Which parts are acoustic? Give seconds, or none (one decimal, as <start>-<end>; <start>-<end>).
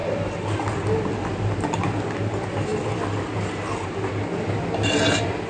0.0-5.5